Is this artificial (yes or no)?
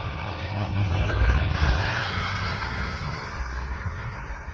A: yes